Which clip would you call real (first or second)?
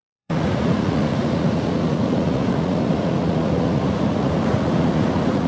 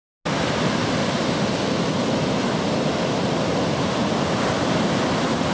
second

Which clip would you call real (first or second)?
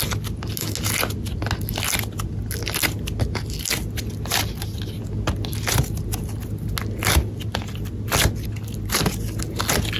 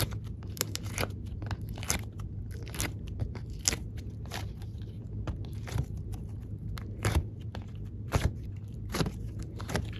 first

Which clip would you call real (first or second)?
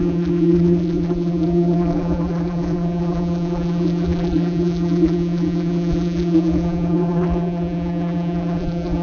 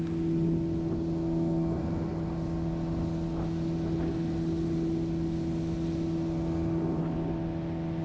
second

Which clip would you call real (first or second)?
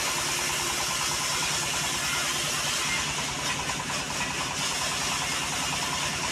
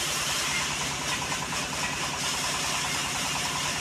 first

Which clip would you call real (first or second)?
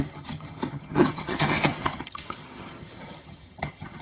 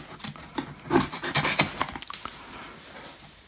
second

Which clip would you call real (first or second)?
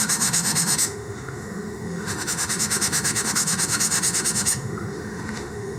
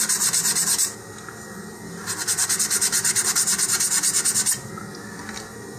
second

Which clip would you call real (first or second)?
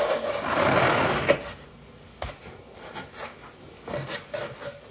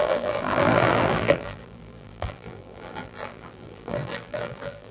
first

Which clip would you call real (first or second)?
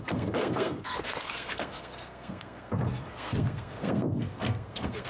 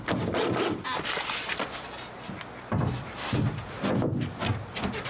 second